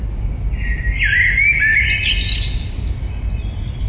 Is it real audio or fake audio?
real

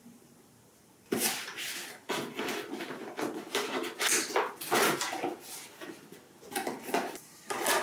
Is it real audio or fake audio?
real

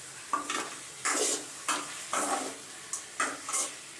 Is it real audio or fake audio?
real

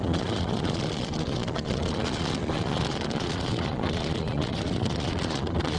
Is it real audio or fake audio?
fake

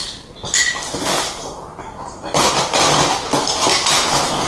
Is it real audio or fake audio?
real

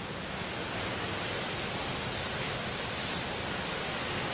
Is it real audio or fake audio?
real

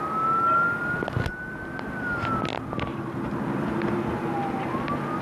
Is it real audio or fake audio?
real